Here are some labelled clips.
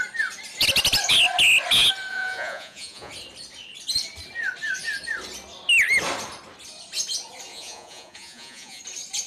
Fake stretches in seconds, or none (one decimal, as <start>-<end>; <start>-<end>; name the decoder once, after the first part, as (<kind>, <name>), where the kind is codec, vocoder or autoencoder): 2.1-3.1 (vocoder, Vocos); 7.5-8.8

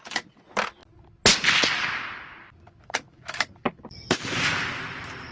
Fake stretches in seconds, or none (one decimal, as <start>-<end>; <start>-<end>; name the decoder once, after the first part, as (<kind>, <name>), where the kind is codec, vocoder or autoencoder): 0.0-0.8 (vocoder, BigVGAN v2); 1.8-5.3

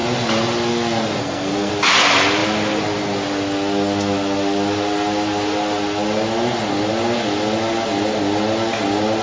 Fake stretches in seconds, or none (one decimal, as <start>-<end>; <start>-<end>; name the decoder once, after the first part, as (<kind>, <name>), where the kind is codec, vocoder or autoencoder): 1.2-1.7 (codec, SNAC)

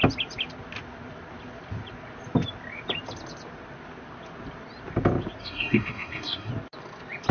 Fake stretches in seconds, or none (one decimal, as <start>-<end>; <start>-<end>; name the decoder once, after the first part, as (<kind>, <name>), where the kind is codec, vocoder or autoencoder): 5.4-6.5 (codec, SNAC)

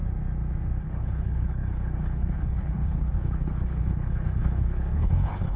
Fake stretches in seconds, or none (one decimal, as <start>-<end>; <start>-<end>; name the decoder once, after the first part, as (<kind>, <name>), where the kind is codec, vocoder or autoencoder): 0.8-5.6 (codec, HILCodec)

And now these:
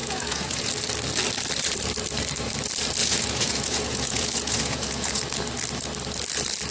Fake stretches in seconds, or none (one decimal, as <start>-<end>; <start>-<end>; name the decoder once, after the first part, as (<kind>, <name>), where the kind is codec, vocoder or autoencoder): 0.0-0.7 (vocoder, Vocos); 3.0-5.2

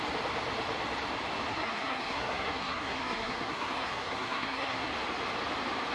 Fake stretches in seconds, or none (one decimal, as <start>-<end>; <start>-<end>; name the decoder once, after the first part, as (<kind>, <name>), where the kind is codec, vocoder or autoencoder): 1.5-4.9 (codec, SNAC)